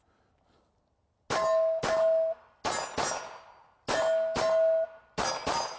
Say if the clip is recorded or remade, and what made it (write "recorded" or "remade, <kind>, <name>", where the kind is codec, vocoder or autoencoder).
recorded